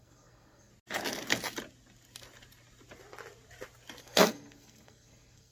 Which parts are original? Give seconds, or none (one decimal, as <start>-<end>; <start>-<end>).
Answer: 0.7-4.0